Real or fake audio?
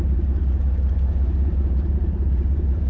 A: fake